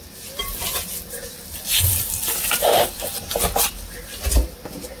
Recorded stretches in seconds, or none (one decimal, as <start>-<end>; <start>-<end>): 0.0-5.0

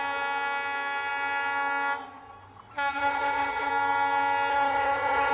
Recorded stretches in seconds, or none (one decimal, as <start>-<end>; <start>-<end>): 0.0-2.9; 3.7-4.5

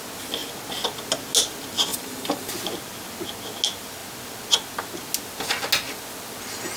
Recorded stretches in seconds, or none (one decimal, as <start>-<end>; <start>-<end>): 0.0-1.9; 2.5-6.8

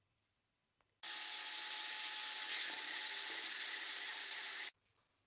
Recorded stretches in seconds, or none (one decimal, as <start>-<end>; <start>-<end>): 0.6-3.8

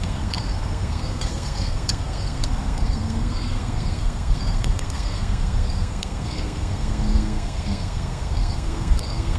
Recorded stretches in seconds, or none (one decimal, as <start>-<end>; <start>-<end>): none